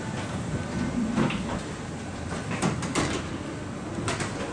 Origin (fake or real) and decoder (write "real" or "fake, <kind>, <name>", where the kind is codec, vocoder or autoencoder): real